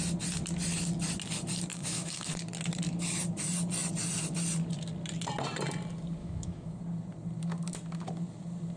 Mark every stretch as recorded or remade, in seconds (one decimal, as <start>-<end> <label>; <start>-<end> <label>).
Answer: 0.0-1.7 recorded; 1.7-2.3 remade; 2.3-6.2 recorded; 6.2-6.8 remade; 6.8-8.8 recorded